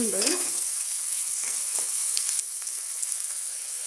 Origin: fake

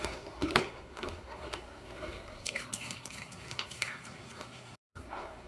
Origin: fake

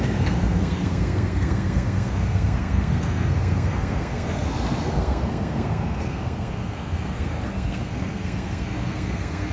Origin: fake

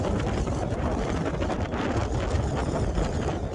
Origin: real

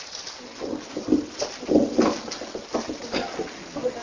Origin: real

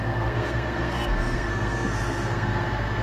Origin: fake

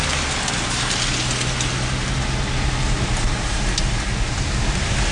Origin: real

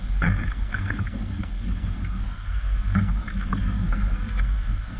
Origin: fake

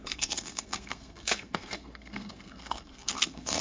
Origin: fake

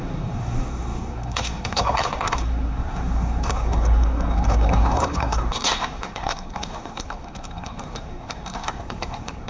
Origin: fake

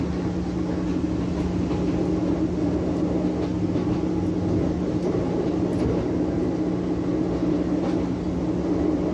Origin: real